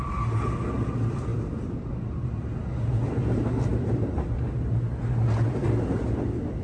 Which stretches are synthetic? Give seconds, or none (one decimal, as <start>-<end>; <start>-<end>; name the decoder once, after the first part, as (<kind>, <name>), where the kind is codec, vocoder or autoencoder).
none